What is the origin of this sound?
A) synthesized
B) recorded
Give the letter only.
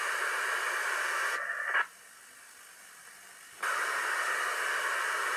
B